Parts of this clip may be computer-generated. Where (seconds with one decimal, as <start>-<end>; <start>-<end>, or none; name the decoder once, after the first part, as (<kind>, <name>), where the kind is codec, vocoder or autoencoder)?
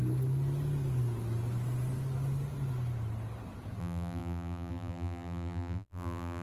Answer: 3.8-6.4 (vocoder, BigVGAN v2)